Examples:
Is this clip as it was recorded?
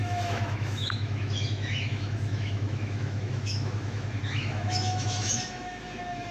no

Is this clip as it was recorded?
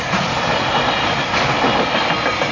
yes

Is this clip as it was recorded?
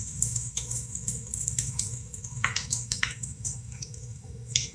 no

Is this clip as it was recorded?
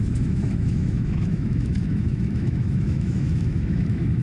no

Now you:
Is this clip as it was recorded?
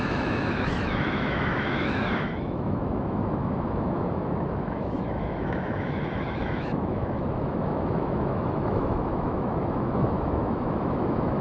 no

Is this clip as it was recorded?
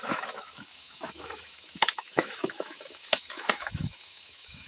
no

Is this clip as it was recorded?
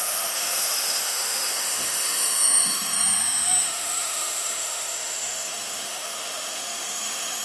no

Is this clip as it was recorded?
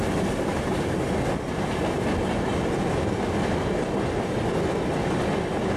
yes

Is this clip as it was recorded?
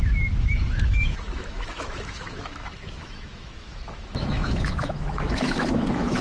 no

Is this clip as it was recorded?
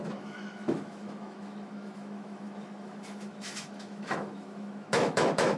no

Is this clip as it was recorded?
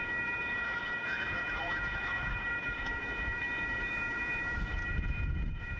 no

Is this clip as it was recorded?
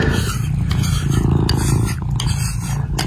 yes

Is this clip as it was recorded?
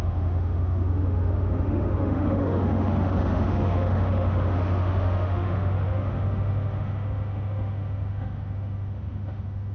no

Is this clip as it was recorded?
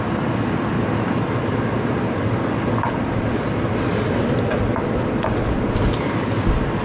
yes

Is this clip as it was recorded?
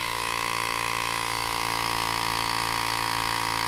no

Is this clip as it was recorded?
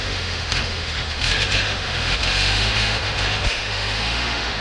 no